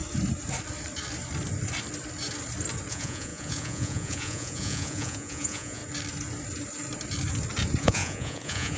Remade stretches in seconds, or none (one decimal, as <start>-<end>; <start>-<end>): 2.9-5.8; 7.8-8.8